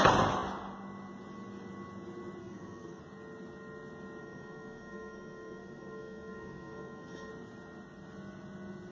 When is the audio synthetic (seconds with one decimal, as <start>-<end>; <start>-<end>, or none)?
2.4-3.0; 4.2-7.3